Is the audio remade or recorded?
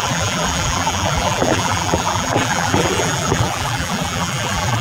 remade